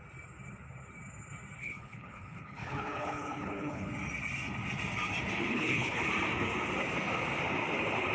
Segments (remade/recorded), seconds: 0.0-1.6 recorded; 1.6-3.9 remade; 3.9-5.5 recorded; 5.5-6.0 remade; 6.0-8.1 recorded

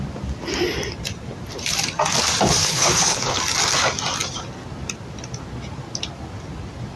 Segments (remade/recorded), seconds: 0.0-2.6 recorded; 2.6-3.4 remade; 3.4-7.0 recorded

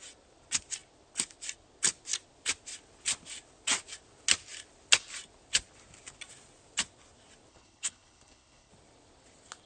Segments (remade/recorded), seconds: 0.0-7.5 recorded; 7.5-8.7 remade; 8.7-9.7 recorded